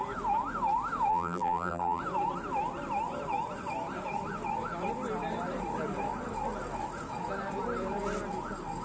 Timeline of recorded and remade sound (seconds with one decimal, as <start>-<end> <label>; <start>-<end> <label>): 0.0-1.1 recorded; 1.1-2.0 remade; 2.0-8.8 recorded